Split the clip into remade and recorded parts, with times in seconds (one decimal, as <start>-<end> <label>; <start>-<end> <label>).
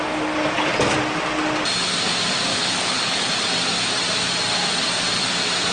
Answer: 0.0-2.5 recorded; 2.5-3.3 remade; 3.3-5.7 recorded